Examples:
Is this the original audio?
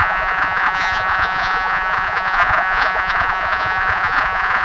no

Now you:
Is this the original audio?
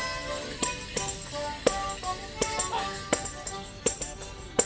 yes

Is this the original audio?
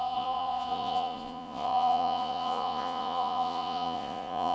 no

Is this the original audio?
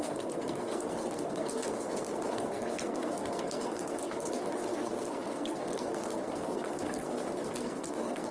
no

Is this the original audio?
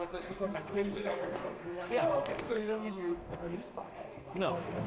no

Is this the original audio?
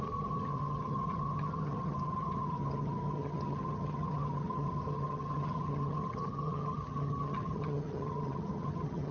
no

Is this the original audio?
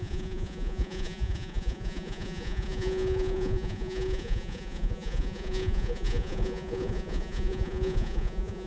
no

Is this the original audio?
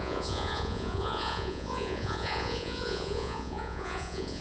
no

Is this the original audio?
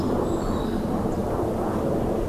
no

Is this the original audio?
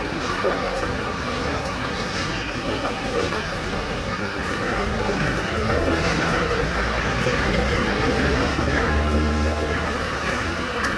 no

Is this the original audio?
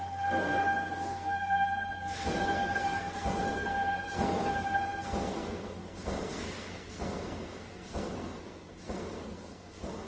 no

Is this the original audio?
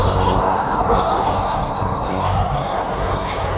no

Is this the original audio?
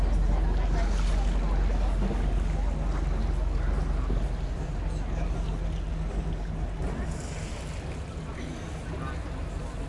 yes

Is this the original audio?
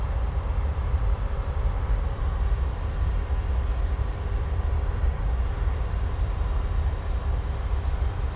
yes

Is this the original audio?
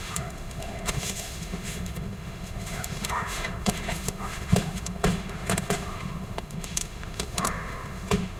no